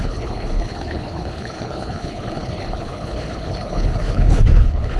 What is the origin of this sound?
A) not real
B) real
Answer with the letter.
A